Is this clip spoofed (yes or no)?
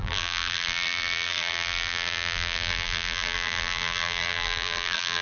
yes